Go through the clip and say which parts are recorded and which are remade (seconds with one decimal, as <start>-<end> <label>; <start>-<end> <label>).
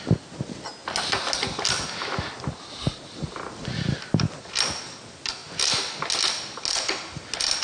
0.0-7.6 recorded